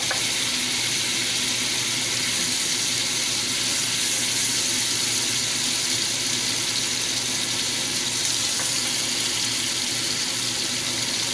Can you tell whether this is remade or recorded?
recorded